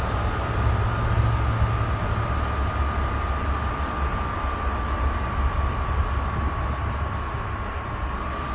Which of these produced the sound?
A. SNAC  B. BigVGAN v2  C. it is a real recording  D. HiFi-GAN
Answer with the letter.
C